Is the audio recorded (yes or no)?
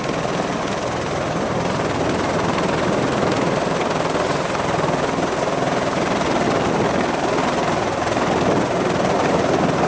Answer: yes